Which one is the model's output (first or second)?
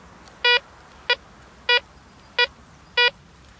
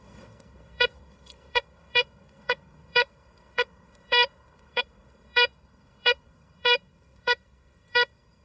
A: second